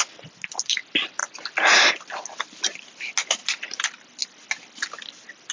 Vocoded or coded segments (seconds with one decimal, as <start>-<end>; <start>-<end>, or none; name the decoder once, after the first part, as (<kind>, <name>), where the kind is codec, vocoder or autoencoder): none